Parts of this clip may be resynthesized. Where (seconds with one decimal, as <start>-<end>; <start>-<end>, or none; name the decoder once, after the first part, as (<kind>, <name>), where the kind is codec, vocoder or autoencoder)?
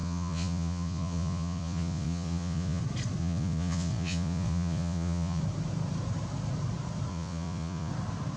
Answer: 0.0-2.8 (vocoder, Vocos); 3.2-5.4; 7.1-7.9